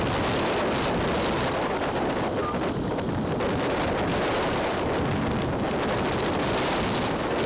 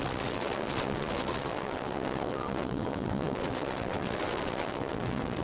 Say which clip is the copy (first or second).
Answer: second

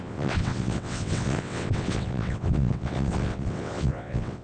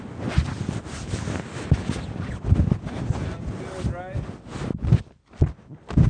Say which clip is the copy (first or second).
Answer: first